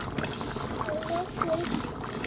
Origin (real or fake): real